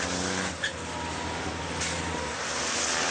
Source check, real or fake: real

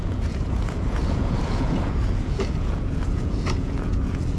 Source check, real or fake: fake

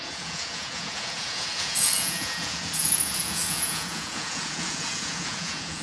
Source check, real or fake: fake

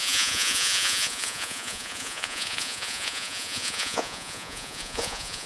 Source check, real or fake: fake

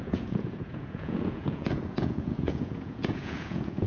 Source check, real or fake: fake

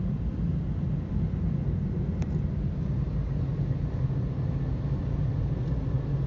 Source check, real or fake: real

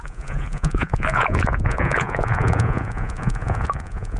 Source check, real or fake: fake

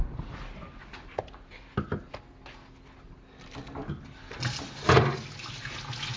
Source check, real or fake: real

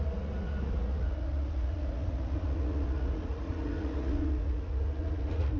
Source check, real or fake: fake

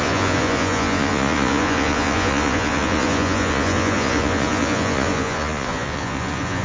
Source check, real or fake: fake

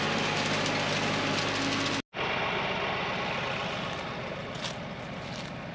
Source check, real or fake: real